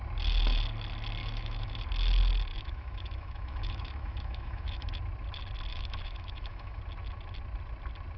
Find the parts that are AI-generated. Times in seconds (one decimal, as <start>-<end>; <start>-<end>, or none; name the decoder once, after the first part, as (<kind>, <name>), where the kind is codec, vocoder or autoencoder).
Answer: 1.2-1.8 (autoencoder, DAC-VAE); 2.5-4.9; 5.7-6.8